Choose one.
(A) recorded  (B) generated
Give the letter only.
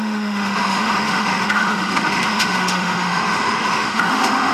B